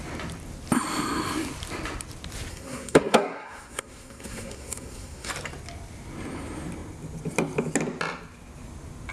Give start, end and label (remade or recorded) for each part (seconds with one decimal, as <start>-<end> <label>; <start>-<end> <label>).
0.0-2.5 recorded; 2.5-5.3 remade; 5.3-9.1 recorded